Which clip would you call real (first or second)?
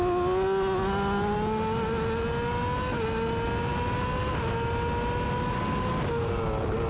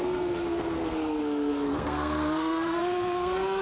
first